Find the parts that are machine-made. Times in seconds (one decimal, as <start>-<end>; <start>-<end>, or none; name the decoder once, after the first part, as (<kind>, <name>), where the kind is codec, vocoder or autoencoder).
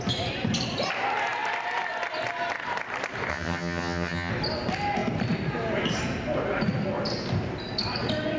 3.3-4.3 (vocoder, HiFi-GAN)